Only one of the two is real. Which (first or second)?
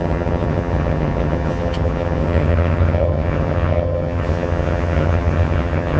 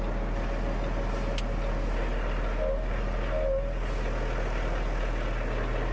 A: second